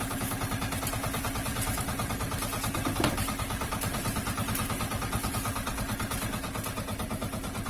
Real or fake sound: real